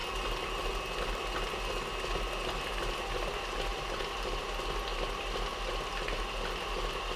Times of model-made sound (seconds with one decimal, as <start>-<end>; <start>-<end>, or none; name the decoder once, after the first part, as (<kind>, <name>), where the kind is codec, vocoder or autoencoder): 3.7-4.4 (vocoder, BigVGAN v2)